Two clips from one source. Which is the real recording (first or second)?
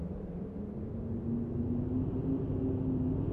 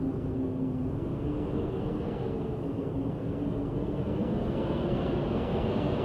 first